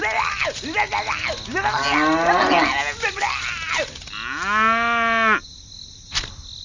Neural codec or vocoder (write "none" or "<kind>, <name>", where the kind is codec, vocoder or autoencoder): none